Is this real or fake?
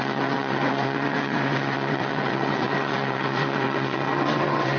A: fake